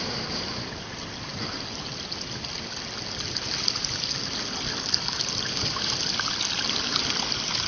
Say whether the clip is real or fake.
real